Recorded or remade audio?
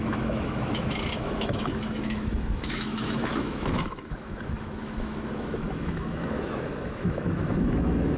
remade